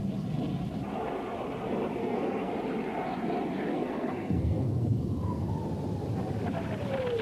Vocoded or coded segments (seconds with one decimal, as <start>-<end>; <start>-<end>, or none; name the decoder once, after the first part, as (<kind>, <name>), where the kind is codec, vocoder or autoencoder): 2.0-2.5 (codec, SNAC); 3.7-5.5